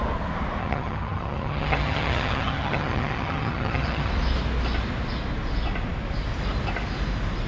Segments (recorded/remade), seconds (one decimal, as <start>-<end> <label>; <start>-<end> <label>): 0.0-0.6 recorded; 0.6-4.1 remade; 4.1-7.5 recorded

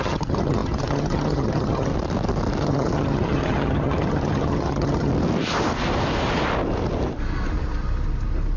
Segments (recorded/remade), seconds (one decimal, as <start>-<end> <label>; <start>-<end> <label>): 0.0-1.9 remade; 1.9-2.6 recorded; 2.6-5.1 remade; 5.1-8.6 recorded